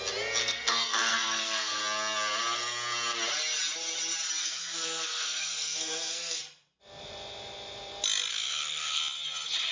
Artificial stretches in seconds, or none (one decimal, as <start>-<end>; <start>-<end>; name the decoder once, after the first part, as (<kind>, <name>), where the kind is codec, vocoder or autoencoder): 0.4-1.8 (codec, SNAC); 4.4-6.4; 8.3-9.0

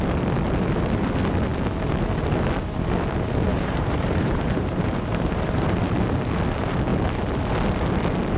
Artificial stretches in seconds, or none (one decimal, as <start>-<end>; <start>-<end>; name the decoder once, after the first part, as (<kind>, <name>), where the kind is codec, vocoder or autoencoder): 3.5-5.8 (vocoder, BigVGAN v2)

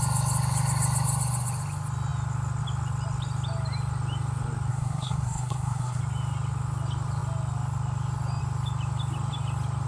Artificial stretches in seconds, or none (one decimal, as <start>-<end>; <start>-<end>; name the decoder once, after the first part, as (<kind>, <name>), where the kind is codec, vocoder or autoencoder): 4.7-6.0 (codec, SNAC)